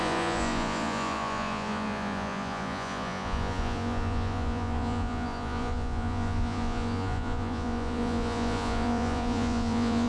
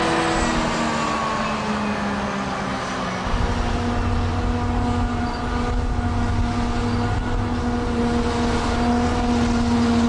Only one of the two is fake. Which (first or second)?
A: first